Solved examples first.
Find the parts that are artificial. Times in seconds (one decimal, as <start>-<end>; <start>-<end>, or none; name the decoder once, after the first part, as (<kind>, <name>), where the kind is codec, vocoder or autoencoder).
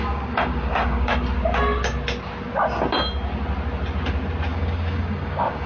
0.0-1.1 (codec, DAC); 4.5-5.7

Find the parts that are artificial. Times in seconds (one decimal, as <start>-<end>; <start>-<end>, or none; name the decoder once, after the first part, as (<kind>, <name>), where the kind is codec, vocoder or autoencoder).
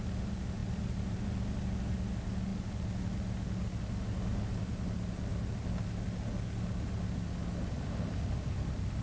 none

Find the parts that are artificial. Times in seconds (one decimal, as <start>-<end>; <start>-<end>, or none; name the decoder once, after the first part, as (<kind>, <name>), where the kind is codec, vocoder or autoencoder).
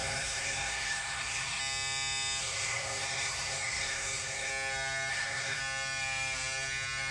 0.0-1.6 (codec, SNAC); 2.4-4.5; 5.1-5.6